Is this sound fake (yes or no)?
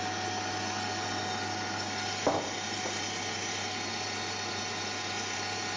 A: no